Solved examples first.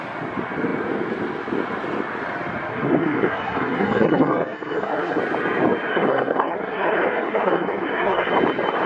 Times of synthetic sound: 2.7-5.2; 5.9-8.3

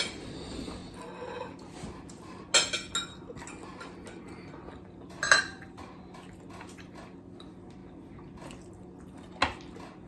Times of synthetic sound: none